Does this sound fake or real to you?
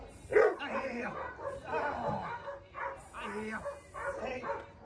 real